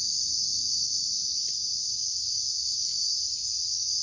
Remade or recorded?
remade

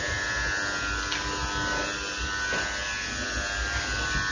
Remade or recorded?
recorded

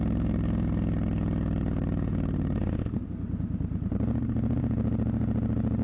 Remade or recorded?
recorded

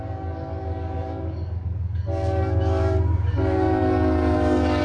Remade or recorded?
remade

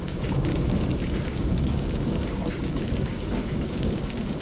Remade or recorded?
remade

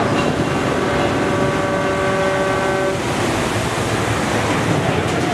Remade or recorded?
recorded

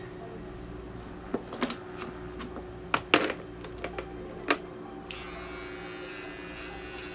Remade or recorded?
recorded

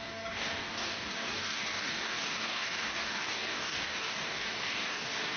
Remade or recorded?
remade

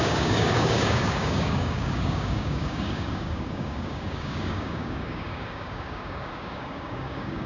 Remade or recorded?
remade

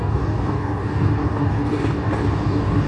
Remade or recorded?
remade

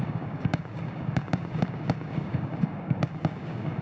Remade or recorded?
remade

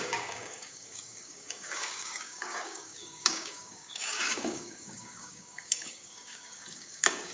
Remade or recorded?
remade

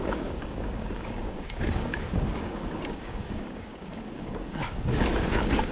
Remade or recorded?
remade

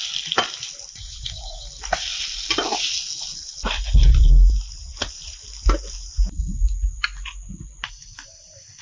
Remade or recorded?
recorded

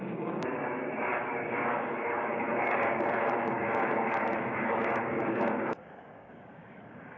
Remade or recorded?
remade